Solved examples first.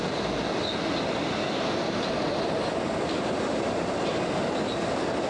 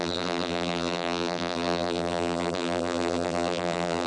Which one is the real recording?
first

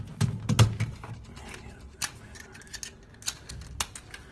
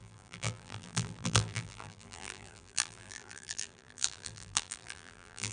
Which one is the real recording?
first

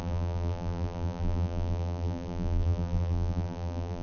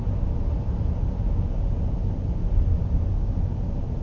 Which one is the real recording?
second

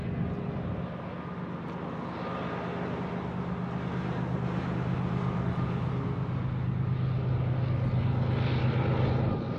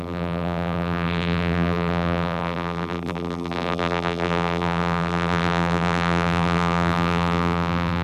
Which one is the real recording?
first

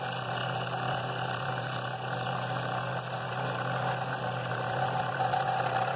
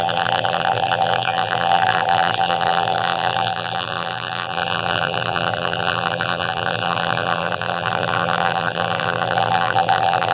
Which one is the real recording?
first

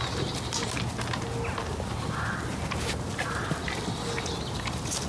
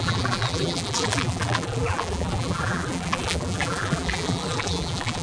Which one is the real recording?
first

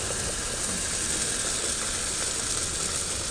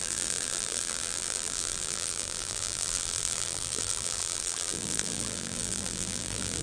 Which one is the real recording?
first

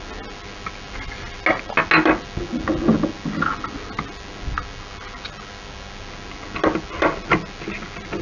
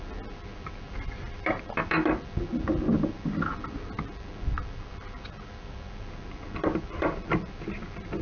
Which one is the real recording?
first